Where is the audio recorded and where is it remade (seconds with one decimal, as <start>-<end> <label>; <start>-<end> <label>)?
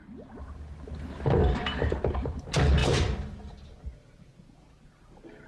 0.0-1.4 recorded; 1.4-2.4 remade; 2.4-2.8 recorded; 2.8-4.6 remade; 4.6-5.5 recorded